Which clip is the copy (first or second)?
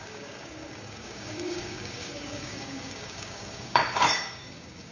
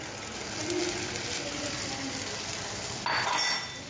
first